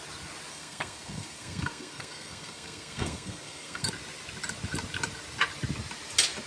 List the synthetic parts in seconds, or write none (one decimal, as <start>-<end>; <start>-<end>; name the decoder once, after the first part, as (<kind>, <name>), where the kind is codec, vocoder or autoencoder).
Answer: 0.5-3.9 (codec, SNAC)